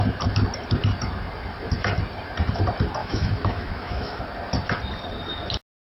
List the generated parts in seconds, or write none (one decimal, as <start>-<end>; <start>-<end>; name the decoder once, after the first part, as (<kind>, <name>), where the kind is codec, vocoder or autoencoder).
3.0-4.2 (autoencoder, DAC-VAE)